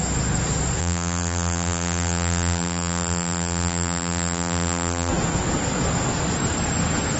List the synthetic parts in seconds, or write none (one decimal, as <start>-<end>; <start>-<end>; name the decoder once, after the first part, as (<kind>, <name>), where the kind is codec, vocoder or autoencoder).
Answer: 0.8-5.1 (vocoder, BigVGAN v2)